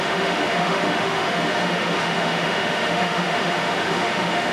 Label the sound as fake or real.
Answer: fake